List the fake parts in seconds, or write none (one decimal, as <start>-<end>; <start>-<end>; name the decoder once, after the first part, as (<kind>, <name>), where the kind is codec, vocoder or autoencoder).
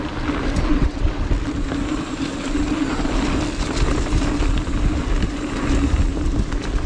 0.7-1.3 (vocoder, WaveNeXt)